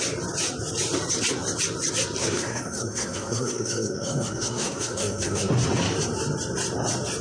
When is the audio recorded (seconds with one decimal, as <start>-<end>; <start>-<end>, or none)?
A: 0.0-2.2; 5.5-7.2